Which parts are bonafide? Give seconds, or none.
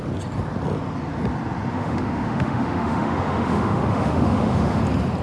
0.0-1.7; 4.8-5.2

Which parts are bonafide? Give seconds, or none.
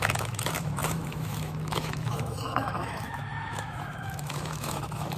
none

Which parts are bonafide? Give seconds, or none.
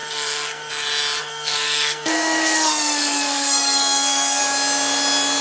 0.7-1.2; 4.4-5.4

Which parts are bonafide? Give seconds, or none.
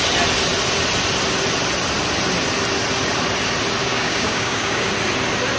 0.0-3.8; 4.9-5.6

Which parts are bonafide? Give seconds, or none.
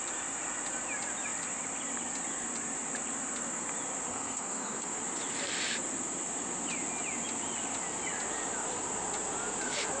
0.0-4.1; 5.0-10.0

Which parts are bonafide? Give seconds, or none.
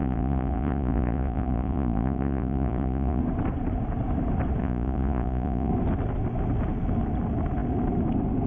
3.2-4.6; 5.7-8.5